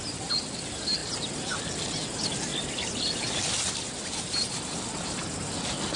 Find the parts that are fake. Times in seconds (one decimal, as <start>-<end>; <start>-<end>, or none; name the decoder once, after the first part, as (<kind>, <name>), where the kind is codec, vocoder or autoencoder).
2.5-5.5 (vocoder, BigVGAN v2)